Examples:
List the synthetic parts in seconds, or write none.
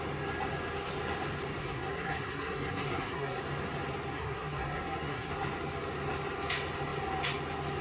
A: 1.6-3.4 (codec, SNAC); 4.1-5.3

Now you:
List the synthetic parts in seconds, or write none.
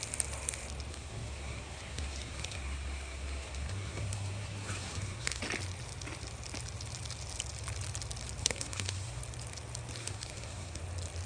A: 0.9-5.4 (codec, SNAC); 8.4-9.2; 10.0-10.8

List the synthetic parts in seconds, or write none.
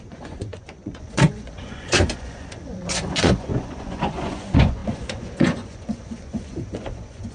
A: 0.0-7.3 (vocoder, Vocos)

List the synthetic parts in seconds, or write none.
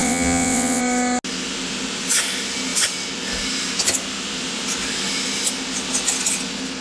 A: 0.0-0.8 (vocoder, WaveNeXt)